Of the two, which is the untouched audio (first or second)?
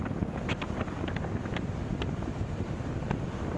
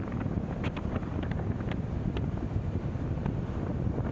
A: first